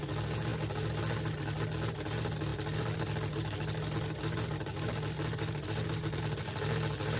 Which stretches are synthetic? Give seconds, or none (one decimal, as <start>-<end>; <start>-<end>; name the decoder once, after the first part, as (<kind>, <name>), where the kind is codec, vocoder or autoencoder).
none